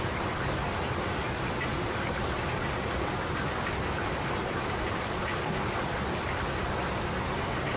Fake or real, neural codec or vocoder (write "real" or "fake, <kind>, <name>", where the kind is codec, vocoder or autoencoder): real